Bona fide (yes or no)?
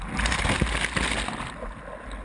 yes